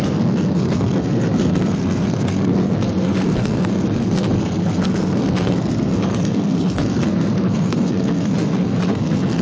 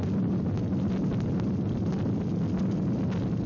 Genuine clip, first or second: second